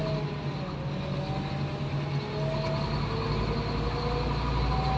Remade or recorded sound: recorded